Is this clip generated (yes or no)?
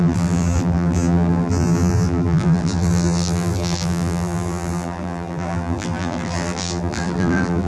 yes